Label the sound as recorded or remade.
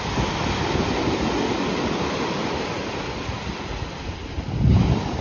recorded